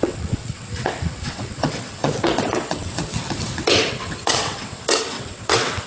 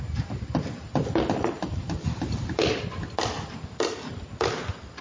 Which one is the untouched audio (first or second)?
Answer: second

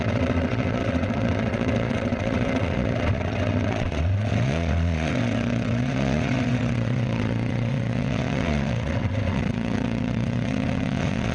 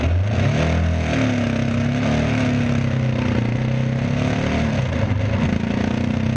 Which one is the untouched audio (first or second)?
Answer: second